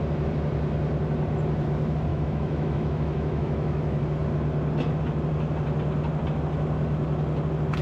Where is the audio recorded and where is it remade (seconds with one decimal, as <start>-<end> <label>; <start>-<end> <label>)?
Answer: 0.0-2.1 recorded; 2.1-4.0 remade; 4.0-7.8 recorded